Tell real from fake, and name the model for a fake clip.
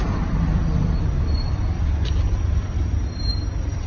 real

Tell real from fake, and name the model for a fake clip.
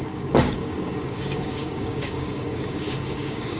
fake, codec, DAC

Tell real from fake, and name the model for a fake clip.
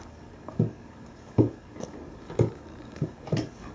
fake, codec, DAC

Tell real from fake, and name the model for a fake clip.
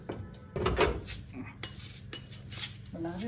real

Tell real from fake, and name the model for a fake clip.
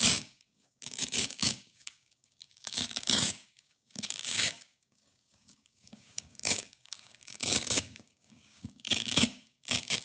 fake, codec, DAC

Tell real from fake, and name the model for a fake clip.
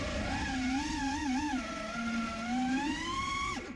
real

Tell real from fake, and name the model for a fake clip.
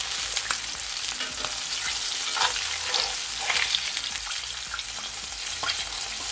real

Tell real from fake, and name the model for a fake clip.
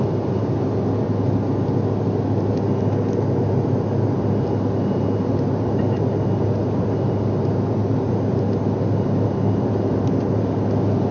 real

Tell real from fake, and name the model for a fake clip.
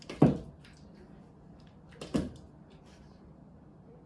real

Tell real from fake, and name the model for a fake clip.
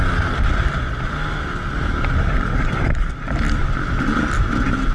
real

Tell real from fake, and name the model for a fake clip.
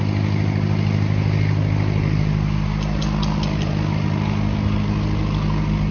real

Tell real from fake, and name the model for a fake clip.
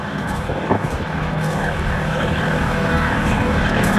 fake, codec, DAC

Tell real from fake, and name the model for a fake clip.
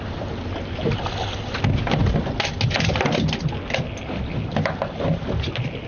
real